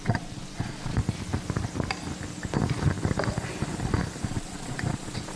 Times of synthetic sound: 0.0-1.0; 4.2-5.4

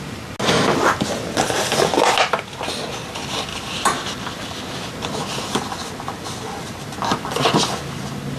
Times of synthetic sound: none